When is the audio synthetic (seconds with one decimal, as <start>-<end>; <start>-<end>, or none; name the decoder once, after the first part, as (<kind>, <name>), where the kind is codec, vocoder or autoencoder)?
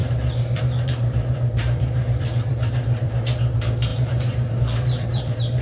0.0-5.6 (vocoder, BigVGAN v2)